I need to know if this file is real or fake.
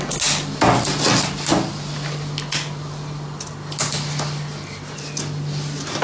real